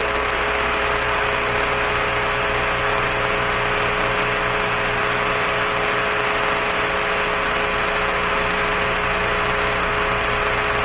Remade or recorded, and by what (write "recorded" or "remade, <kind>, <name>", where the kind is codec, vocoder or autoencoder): recorded